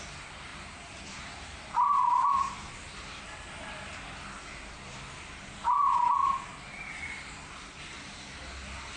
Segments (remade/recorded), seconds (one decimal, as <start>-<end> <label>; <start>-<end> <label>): 0.0-0.5 recorded; 0.5-3.2 remade; 3.2-9.0 recorded